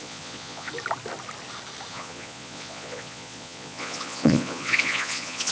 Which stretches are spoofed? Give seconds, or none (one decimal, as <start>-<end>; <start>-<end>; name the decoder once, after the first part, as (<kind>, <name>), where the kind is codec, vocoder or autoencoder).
0.0-0.7 (vocoder, Vocos); 1.9-5.5